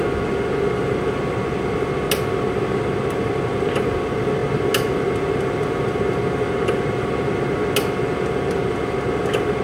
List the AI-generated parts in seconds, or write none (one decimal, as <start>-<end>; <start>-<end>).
none